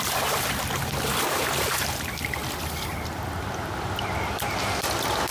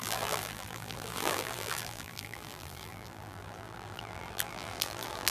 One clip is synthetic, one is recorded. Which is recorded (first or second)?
first